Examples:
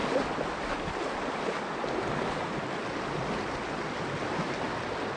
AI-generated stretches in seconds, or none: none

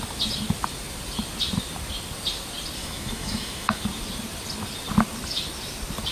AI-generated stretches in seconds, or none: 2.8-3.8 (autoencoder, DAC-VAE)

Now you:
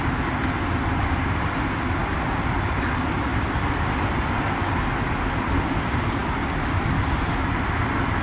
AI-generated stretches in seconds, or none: none

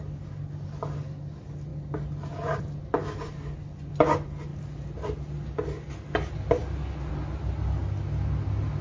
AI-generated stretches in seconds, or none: none

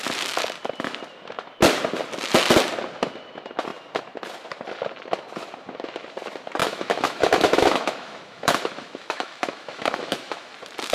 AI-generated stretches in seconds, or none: 6.6-10.5 (autoencoder, DAC-VAE)

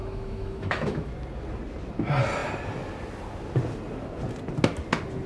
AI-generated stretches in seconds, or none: 0.0-1.1 (autoencoder, DAC-VAE)